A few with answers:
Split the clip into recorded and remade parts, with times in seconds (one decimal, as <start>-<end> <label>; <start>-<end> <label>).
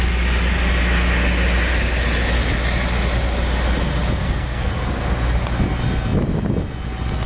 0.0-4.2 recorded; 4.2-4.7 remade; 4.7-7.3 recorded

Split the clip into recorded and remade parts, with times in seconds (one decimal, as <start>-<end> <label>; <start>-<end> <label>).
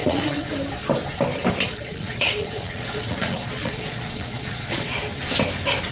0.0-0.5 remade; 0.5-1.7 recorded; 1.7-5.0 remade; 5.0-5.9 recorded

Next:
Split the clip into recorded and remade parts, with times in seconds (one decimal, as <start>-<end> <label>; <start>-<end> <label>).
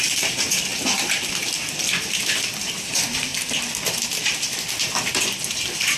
0.0-0.7 remade; 0.7-2.2 recorded; 2.2-3.3 remade; 3.3-5.6 recorded; 5.6-6.0 remade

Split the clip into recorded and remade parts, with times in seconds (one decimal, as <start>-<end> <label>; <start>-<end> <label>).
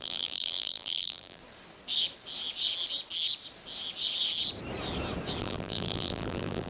0.0-1.4 remade; 1.4-5.4 recorded; 5.4-6.7 remade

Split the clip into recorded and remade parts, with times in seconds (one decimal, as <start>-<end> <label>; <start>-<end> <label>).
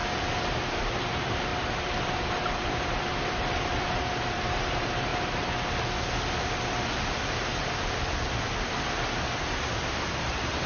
0.0-0.8 recorded; 0.8-5.1 remade; 5.1-9.7 recorded; 9.7-10.7 remade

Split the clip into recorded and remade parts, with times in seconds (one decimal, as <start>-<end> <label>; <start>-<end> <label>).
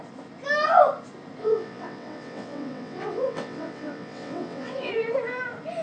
0.0-1.4 recorded; 1.4-4.9 remade; 4.9-5.8 recorded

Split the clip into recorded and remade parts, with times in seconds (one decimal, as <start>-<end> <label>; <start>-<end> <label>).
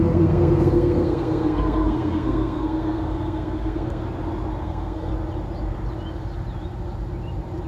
0.0-4.0 remade; 4.0-4.6 recorded; 4.6-5.1 remade; 5.1-7.7 recorded